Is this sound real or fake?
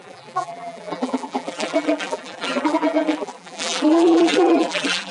fake